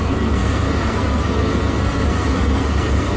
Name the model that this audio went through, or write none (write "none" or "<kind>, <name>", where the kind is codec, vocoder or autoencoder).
codec, SNAC